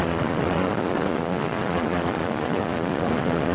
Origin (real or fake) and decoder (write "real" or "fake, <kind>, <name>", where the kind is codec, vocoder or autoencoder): fake, vocoder, Vocos